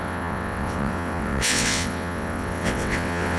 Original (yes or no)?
no